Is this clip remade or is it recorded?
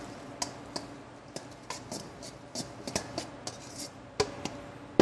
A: recorded